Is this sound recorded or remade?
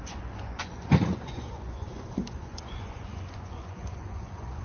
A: remade